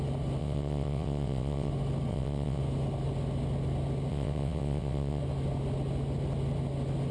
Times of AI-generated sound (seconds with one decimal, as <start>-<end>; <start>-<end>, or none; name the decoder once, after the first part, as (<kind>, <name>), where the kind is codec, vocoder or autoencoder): 0.4-1.7 (vocoder, WaveNeXt); 2.1-2.6; 4.1-5.2